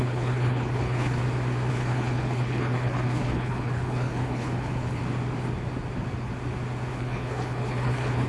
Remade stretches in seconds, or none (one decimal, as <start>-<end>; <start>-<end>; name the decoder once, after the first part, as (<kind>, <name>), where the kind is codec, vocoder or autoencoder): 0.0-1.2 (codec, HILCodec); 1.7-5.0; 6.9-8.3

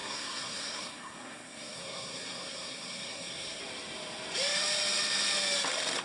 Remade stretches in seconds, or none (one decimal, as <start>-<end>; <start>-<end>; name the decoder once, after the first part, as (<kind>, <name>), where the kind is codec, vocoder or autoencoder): 0.0-3.6 (codec, SNAC)

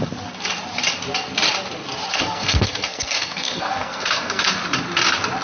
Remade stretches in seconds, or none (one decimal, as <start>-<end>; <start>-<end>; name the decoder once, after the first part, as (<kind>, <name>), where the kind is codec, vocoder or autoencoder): 2.1-4.5 (codec, SNAC)

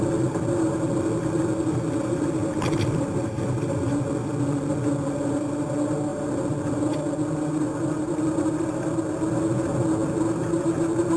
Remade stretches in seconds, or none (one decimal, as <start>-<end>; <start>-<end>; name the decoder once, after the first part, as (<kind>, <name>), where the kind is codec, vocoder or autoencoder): none

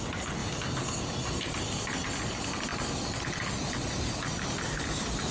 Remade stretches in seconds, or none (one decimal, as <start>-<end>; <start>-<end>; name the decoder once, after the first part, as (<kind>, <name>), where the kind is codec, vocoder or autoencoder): none

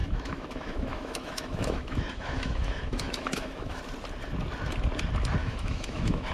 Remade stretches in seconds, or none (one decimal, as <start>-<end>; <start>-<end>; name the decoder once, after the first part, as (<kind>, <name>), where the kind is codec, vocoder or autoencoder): 0.0-3.8 (autoencoder, DAC-VAE); 5.4-6.3

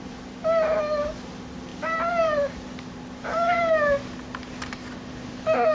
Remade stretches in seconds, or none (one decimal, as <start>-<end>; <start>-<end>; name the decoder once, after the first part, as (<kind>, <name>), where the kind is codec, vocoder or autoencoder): none